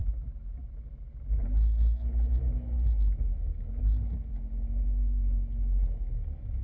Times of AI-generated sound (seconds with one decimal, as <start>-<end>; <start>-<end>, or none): none

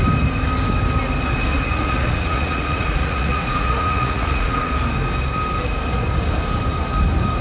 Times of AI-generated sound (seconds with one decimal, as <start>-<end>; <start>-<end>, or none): 1.5-4.7

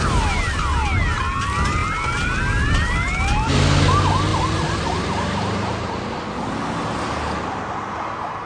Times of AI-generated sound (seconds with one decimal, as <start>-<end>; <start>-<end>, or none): 4.3-5.9

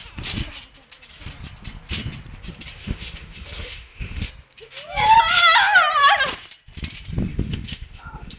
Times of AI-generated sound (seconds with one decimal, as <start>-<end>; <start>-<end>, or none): 2.8-4.3; 7.3-8.4

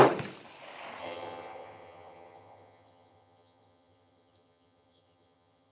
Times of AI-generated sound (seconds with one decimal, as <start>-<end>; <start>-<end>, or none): 1.0-5.7

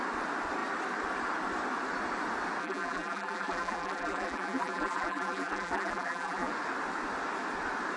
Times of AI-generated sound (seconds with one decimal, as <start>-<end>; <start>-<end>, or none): 2.6-6.5

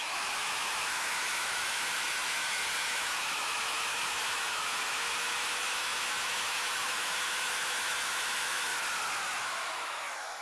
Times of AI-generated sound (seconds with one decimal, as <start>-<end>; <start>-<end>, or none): 0.0-8.7; 9.4-10.4